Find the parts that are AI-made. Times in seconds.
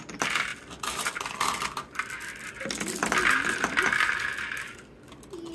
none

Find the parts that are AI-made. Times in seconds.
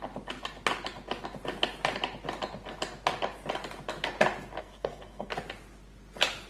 4.6-5.3 (codec, SNAC)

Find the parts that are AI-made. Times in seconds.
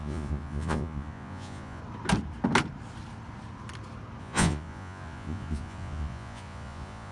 0.0-1.8 (vocoder, Vocos); 4.2-7.1